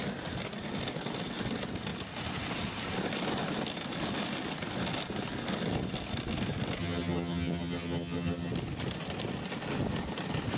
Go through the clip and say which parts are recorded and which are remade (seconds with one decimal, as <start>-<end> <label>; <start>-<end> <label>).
0.0-6.8 recorded; 6.8-8.5 remade; 8.5-10.6 recorded